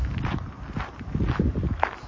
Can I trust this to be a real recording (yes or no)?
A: yes